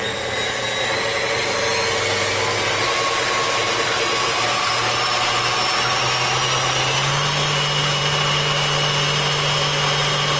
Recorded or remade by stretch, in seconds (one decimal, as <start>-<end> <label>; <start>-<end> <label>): 0.0-10.4 recorded